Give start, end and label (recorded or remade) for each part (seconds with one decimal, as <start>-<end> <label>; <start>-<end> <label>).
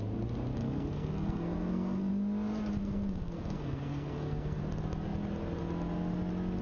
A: 0.0-0.6 recorded; 0.6-2.1 remade; 2.1-2.8 recorded; 2.8-4.6 remade; 4.6-6.6 recorded